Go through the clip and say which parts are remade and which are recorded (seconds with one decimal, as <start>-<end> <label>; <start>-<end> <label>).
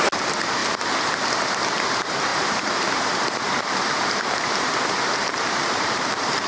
0.0-0.6 remade; 0.6-1.9 recorded; 1.9-6.5 remade